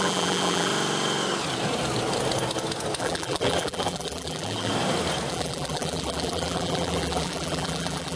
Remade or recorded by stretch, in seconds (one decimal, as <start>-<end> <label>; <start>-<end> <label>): 0.0-0.7 remade; 0.7-3.0 recorded; 3.0-4.7 remade; 4.7-5.3 recorded; 5.3-8.2 remade